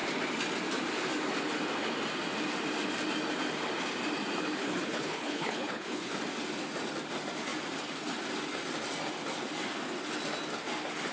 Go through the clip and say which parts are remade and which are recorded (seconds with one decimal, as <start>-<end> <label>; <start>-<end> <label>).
0.0-4.6 recorded; 4.6-6.2 remade; 6.2-11.1 recorded